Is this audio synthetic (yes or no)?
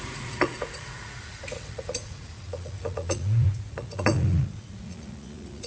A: yes